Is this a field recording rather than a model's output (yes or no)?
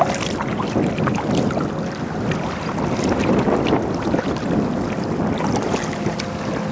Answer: yes